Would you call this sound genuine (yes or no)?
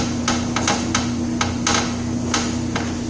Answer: yes